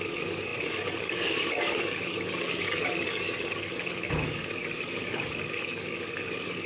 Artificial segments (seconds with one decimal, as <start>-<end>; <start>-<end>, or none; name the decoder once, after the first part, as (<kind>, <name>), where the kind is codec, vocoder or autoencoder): 0.0-6.7 (codec, DAC)